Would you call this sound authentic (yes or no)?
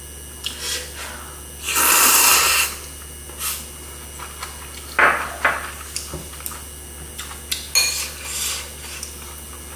yes